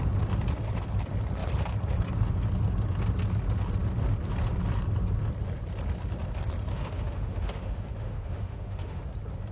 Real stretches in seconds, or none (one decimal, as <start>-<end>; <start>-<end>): 0.0-6.7; 9.0-9.5

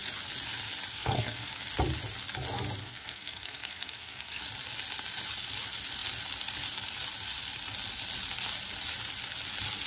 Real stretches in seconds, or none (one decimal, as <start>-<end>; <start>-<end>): 0.0-0.9; 1.5-2.8; 4.4-9.9

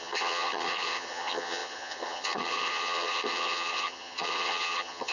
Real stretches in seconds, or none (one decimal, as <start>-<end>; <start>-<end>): none

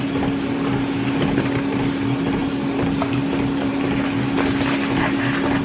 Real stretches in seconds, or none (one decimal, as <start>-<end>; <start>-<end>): 0.0-5.6

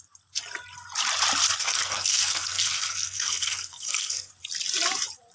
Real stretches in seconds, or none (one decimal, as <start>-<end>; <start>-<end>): 0.0-1.6; 4.3-5.3

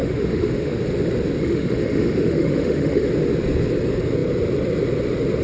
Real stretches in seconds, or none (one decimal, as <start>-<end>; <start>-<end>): 0.8-1.4; 3.1-5.4

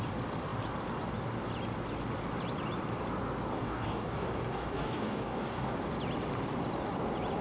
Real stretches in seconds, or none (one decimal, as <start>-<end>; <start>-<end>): 0.0-3.5; 5.8-7.4

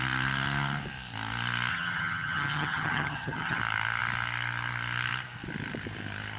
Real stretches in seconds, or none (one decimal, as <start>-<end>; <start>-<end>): 0.0-1.7; 3.6-6.4